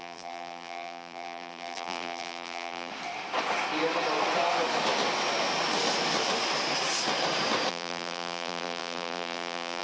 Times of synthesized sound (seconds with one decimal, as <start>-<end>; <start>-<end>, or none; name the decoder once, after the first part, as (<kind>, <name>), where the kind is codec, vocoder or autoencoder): 0.0-2.9 (vocoder, BigVGAN v2); 7.7-9.8